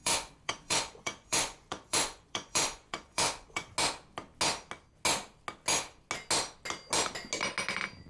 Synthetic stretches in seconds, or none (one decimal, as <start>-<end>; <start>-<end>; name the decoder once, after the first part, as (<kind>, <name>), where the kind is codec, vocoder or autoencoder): 0.0-3.7 (vocoder, Vocos)

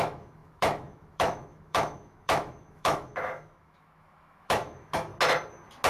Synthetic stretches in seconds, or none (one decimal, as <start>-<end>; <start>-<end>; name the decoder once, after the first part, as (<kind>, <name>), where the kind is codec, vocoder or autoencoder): 0.0-5.1 (autoencoder, DAC-VAE)

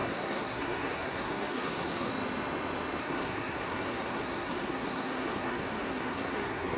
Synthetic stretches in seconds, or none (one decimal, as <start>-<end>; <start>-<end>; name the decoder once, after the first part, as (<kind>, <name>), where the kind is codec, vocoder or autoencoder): 0.0-2.1 (codec, SNAC); 3.0-6.8